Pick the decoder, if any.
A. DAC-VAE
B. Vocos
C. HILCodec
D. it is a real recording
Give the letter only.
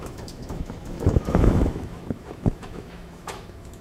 A